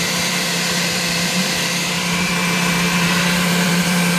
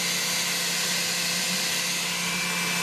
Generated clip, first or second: first